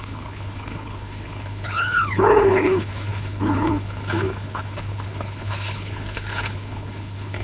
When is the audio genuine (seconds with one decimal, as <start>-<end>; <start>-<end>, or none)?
none